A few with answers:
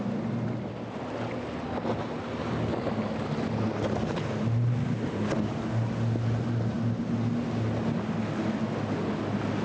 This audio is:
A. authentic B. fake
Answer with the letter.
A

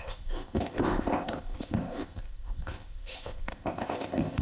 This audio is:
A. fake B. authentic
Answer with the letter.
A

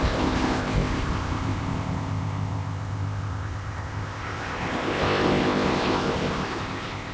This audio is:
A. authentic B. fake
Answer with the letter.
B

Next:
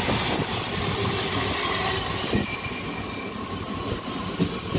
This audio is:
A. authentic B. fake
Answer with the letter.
A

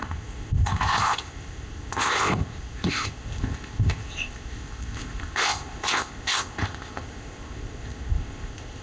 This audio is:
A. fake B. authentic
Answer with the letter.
A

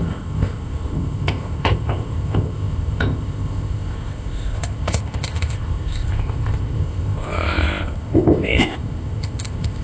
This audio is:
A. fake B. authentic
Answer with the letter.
A